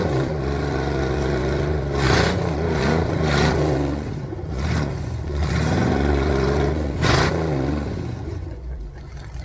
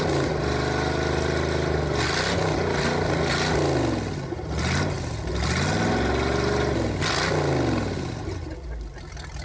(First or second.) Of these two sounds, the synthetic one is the first